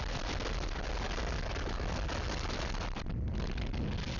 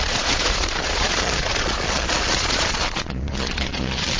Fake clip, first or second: second